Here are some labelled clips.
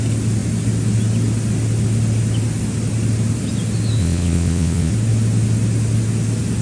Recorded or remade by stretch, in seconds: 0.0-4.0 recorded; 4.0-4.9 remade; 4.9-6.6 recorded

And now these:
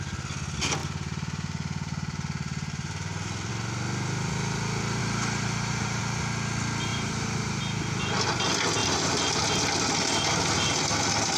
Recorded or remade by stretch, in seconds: 0.0-0.8 recorded; 0.8-3.5 remade; 3.5-5.0 recorded; 5.0-6.0 remade; 6.0-6.9 recorded; 6.9-7.6 remade; 7.6-8.8 recorded; 8.8-9.4 remade; 9.4-11.4 recorded

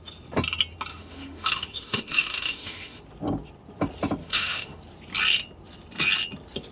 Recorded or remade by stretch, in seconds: 0.0-0.9 recorded; 0.9-3.0 remade; 3.0-4.2 recorded; 4.2-4.8 remade; 4.8-6.7 recorded

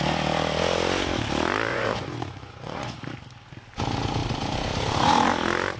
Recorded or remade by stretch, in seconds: 0.0-1.7 recorded; 1.7-3.1 remade; 3.1-5.8 recorded